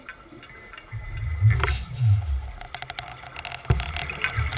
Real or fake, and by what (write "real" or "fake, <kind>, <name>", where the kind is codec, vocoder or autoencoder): real